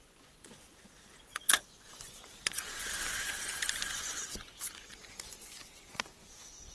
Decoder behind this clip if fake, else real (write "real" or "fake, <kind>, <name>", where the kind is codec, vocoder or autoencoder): fake, vocoder, Vocos